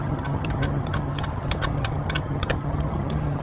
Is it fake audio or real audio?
fake